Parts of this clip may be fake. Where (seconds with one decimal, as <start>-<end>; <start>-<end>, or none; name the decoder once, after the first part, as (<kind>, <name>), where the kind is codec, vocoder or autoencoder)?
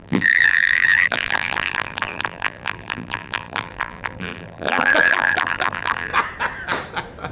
0.0-6.1 (vocoder, BigVGAN v2)